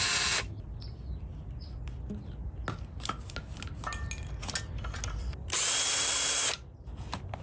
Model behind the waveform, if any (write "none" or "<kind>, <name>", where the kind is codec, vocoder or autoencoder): none